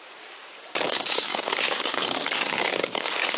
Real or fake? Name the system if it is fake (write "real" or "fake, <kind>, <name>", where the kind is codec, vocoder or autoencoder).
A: fake, codec, DAC